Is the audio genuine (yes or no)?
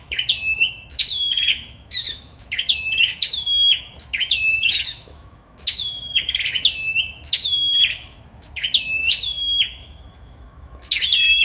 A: no